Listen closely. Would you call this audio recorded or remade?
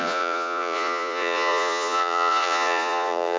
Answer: remade